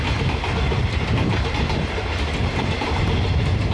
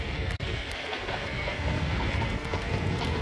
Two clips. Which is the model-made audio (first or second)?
second